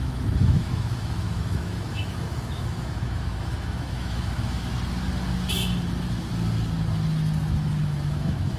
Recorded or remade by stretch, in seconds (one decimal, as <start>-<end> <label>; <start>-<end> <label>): 0.0-4.7 remade; 4.7-7.8 recorded; 7.8-8.6 remade